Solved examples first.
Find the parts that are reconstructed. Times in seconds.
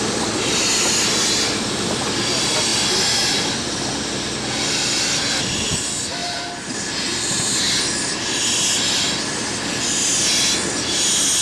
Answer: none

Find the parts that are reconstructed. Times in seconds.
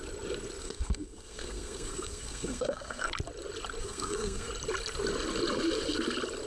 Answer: 0.6-3.1 (codec, SNAC); 3.8-4.5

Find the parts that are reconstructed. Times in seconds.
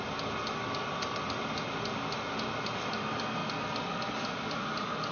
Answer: none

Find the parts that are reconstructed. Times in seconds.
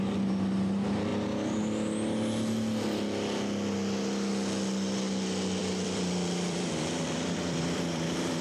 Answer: 5.6-8.4 (vocoder, BigVGAN v2)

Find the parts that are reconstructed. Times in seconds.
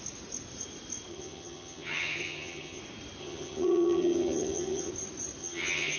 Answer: 1.1-2.8 (vocoder, HiFi-GAN); 3.2-4.9; 5.4-6.0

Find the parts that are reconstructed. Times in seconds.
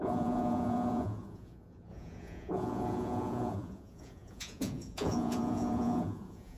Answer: 0.0-6.6 (vocoder, Vocos)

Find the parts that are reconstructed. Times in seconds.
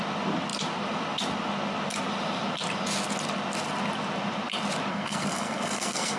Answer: 4.9-6.2 (codec, SNAC)